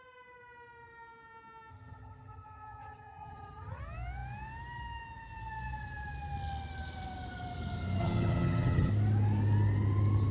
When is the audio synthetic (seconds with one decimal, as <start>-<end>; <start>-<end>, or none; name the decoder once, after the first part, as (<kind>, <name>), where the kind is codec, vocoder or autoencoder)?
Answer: 1.7-3.8 (vocoder, HiFi-GAN); 8.0-8.9